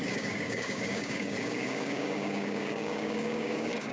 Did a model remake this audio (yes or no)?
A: yes